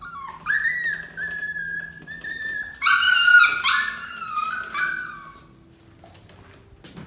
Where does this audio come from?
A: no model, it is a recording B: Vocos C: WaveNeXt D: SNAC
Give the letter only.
A